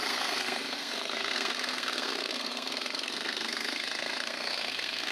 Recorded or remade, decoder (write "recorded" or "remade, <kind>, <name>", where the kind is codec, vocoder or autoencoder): remade, codec, SNAC